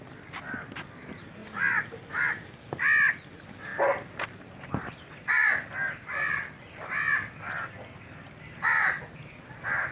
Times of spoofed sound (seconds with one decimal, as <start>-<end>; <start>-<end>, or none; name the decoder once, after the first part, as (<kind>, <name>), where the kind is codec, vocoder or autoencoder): none